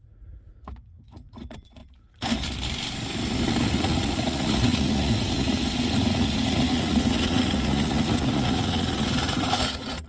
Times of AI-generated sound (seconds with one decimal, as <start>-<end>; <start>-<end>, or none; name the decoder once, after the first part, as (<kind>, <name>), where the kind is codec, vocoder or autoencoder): 0.0-1.8 (vocoder, Vocos); 3.7-10.1